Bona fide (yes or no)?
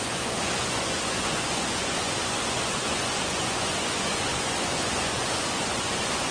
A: no